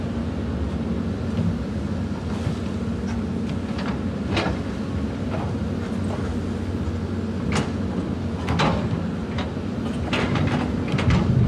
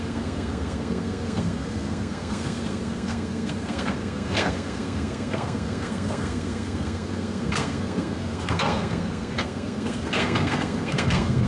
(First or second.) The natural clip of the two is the first